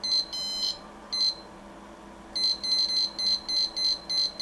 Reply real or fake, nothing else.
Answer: real